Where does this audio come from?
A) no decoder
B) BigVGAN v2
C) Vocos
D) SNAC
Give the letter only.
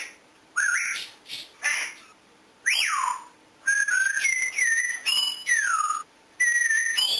B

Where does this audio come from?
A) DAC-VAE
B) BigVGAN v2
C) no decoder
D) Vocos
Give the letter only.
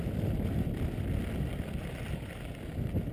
C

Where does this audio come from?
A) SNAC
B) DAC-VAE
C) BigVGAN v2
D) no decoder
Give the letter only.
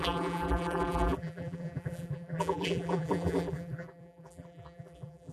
C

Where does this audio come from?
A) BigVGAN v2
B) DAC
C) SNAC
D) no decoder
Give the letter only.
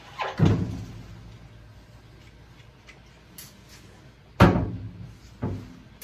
D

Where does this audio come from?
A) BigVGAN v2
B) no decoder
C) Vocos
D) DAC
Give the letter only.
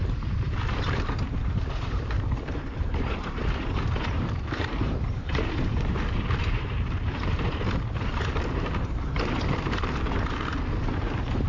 A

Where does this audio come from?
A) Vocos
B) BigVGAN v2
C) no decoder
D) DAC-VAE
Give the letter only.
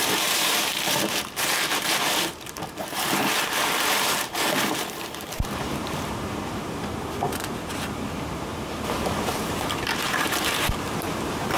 B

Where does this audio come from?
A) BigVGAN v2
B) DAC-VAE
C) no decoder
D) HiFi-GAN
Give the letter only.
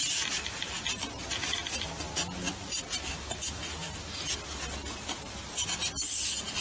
C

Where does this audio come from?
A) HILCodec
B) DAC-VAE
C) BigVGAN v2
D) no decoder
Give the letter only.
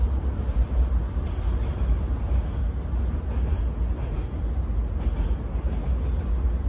D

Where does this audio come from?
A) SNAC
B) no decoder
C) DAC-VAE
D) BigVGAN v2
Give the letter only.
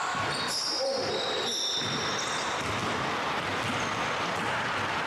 B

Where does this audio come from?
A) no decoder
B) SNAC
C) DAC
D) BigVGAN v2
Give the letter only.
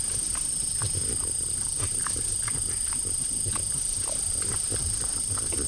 A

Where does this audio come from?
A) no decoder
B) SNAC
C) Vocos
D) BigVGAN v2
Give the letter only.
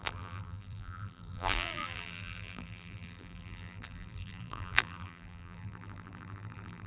D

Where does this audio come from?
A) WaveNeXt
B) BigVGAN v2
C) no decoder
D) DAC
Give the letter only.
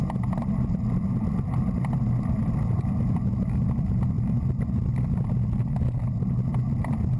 C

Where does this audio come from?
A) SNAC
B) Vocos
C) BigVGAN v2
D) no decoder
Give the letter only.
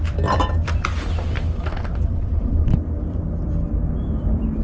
C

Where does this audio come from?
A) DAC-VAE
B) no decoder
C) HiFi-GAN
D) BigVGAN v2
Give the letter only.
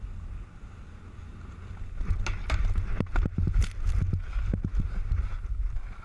B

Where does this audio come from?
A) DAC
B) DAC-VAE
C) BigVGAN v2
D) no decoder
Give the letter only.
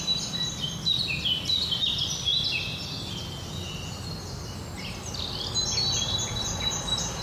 D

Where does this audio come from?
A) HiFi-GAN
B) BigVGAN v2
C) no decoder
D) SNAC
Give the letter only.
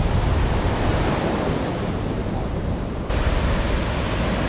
C